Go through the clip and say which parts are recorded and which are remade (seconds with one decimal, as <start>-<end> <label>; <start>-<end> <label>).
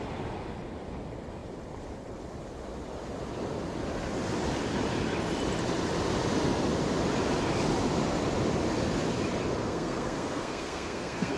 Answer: 0.0-9.6 recorded; 9.6-11.4 remade